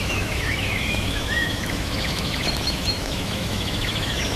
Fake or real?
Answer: fake